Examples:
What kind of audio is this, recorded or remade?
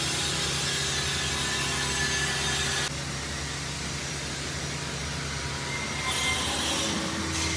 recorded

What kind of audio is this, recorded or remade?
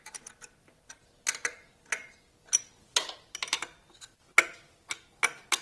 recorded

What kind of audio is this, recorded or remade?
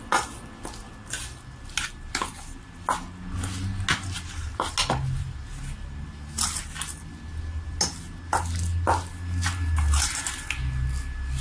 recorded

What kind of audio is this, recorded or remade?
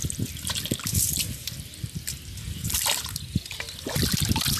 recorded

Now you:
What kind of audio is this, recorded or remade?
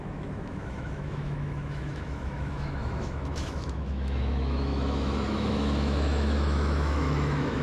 remade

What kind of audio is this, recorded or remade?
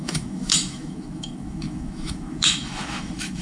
remade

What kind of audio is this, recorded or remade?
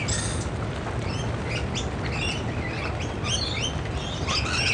recorded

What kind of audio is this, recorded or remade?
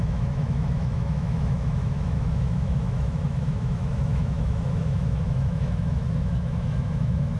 remade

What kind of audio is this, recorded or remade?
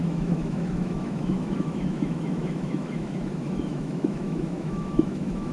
remade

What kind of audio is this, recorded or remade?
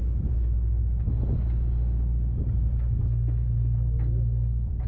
recorded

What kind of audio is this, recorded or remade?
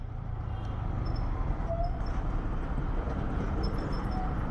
recorded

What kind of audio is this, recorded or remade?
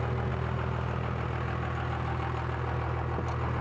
recorded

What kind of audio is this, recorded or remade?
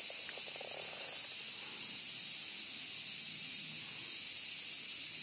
recorded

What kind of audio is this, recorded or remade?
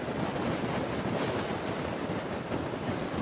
recorded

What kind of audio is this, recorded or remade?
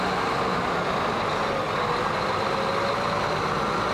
recorded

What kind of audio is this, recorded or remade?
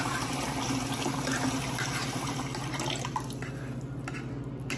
recorded